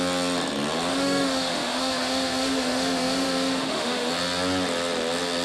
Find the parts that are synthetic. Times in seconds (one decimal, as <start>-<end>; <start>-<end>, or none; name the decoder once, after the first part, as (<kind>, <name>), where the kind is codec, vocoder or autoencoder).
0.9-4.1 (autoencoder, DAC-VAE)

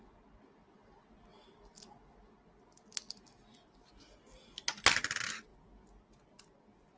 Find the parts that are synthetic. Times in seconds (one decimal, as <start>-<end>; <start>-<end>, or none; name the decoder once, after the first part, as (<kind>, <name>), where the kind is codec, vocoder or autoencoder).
none

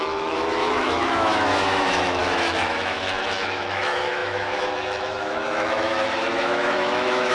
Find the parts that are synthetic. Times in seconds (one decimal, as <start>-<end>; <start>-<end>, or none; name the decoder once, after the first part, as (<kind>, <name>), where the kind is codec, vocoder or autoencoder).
0.0-7.3 (autoencoder, DAC-VAE)

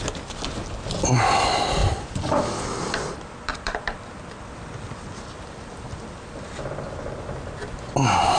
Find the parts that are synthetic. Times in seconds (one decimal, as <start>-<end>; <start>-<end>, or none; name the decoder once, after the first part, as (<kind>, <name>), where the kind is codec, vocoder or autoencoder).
1.8-6.8 (vocoder, BigVGAN v2)

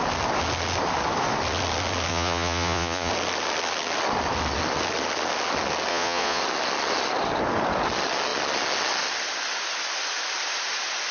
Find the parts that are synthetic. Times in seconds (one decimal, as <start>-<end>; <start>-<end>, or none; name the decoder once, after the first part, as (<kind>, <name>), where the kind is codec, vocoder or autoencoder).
2.1-3.1 (vocoder, Vocos); 5.9-6.4

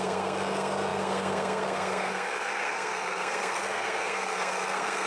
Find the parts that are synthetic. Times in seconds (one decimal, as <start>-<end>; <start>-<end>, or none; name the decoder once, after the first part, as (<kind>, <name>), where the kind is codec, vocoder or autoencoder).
0.0-5.1 (codec, SNAC)

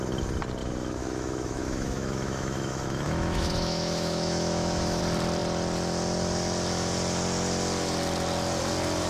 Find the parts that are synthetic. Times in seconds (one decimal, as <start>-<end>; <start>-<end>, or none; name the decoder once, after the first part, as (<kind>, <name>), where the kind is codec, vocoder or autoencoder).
0.6-5.0 (autoencoder, DAC-VAE)